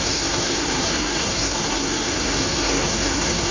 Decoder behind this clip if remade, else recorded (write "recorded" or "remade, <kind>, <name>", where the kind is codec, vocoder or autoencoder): remade, codec, SNAC